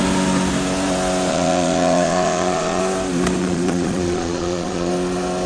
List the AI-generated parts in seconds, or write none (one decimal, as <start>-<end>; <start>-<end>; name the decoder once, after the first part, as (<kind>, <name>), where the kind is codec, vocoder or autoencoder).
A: 1.3-2.8 (vocoder, Vocos); 3.4-4.9